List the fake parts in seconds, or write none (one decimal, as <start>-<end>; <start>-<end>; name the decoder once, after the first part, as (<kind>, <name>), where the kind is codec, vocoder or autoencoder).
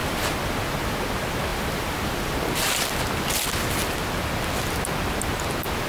1.5-2.5 (vocoder, BigVGAN v2)